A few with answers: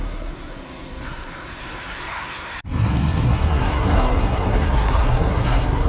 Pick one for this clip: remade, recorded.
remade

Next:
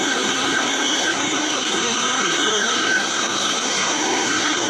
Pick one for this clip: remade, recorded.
remade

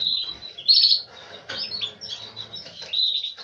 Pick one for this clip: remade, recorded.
recorded